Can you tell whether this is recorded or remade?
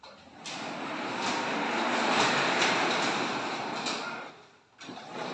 recorded